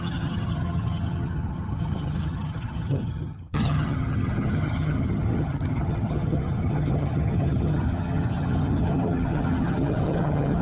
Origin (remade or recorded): remade